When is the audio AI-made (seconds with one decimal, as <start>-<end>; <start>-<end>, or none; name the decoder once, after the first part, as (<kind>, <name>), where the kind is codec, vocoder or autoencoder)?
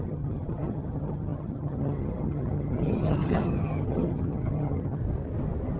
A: 0.0-5.0 (vocoder, HiFi-GAN)